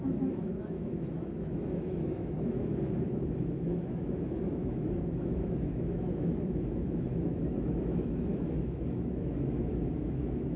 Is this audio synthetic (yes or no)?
yes